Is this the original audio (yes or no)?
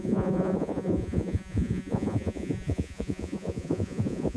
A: no